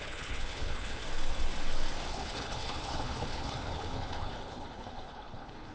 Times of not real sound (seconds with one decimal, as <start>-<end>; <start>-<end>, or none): 0.0-1.0; 2.1-5.7